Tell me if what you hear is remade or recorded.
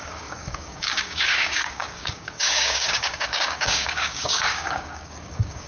remade